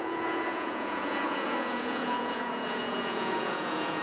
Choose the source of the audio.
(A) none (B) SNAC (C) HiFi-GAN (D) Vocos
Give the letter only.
D